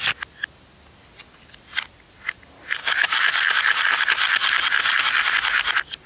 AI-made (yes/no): no